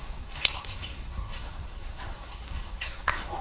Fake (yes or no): yes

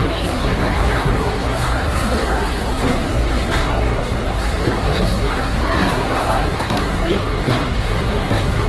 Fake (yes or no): yes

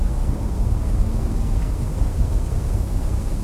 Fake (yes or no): yes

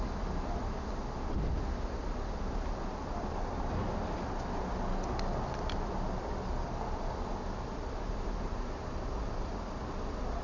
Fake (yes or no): no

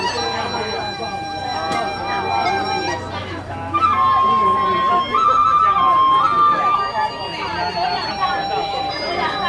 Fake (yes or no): no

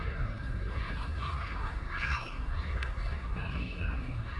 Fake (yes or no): yes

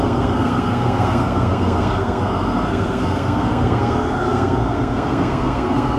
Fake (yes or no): yes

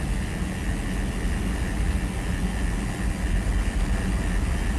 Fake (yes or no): no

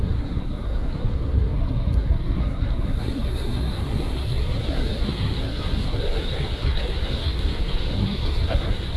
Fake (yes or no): yes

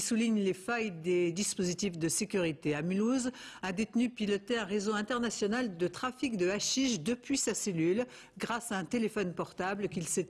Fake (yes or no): no